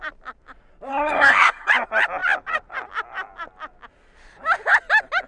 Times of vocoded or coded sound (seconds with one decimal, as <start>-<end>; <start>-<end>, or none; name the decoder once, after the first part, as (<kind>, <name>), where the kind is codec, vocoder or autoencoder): 0.9-1.7 (codec, SNAC)

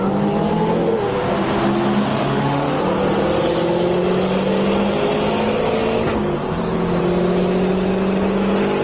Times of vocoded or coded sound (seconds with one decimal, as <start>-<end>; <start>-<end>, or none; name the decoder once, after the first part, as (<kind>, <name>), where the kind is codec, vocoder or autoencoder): 2.1-2.8 (autoencoder, DAC-VAE)

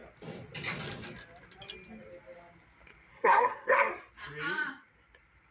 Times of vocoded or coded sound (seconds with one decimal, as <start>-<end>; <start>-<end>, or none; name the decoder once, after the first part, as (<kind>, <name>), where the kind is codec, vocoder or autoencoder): 3.1-3.9 (codec, SNAC)

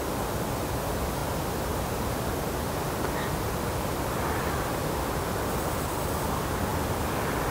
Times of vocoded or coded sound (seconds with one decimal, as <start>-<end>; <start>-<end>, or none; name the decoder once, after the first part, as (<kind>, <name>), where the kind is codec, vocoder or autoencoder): none